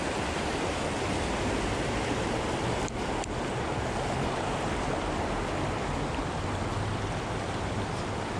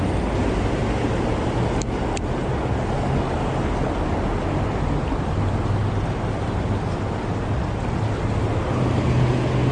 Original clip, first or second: second